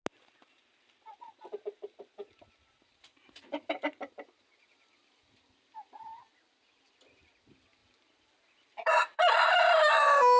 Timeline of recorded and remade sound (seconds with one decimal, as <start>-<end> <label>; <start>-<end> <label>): 0.0-3.1 recorded; 3.1-4.1 remade; 4.1-7.8 recorded; 7.8-9.7 remade; 9.7-10.4 recorded